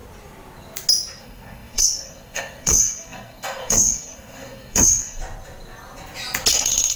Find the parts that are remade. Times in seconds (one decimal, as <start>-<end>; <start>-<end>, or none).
1.2-5.2; 6.5-7.0